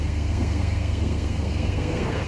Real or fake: fake